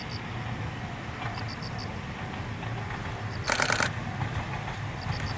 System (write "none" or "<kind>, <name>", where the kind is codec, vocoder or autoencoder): none